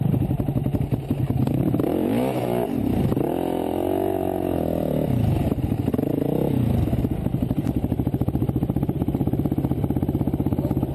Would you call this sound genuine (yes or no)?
yes